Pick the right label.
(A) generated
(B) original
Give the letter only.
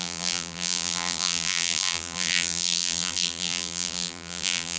A